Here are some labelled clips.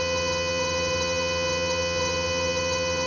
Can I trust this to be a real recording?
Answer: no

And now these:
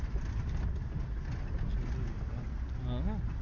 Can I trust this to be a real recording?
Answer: yes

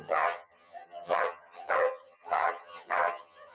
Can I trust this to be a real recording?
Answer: no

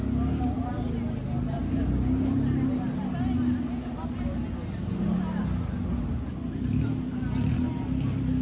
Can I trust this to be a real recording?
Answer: yes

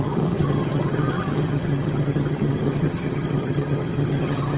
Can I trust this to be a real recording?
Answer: no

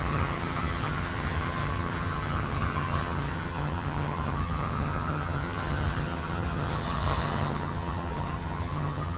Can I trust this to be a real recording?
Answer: no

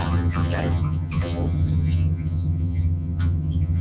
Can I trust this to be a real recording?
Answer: no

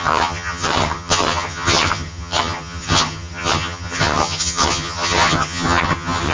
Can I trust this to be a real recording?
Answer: no